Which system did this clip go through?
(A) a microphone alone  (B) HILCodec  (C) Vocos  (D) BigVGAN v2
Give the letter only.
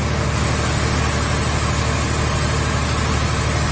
A